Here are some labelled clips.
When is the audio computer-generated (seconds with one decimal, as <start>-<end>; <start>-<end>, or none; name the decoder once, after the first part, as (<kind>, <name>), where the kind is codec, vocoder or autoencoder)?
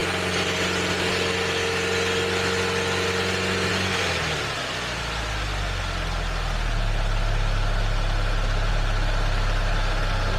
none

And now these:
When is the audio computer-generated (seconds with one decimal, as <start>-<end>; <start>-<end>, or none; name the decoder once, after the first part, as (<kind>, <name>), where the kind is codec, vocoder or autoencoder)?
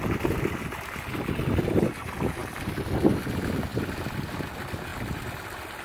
none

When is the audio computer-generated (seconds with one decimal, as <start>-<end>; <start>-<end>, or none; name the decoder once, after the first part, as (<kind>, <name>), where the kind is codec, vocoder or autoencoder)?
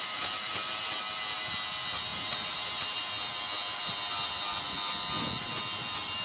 none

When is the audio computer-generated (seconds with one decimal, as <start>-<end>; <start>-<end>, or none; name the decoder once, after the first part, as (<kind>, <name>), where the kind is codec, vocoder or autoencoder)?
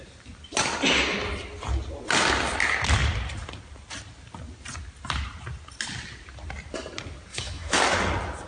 7.3-7.8 (autoencoder, DAC-VAE)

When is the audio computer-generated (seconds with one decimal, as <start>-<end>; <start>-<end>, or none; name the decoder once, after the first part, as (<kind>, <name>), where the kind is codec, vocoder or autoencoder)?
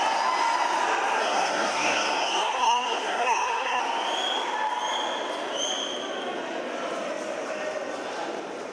1.2-3.8 (codec, SNAC)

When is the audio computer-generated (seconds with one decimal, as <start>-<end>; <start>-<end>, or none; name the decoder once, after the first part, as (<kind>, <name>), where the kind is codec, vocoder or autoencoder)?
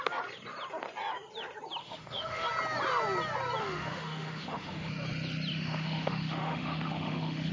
1.8-2.5 (autoencoder, DAC-VAE); 3.6-4.9; 5.5-7.5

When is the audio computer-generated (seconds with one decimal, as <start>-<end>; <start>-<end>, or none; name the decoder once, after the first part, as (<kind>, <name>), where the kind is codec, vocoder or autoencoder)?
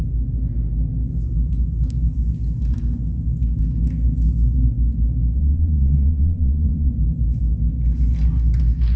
5.4-6.9 (vocoder, Vocos)